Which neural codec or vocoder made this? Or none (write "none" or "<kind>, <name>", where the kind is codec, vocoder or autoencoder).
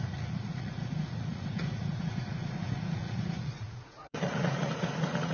vocoder, Vocos